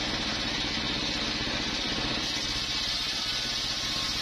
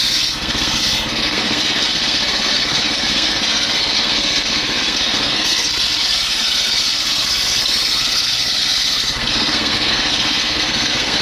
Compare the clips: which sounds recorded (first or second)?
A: first